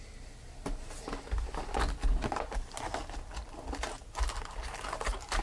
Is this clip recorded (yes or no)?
yes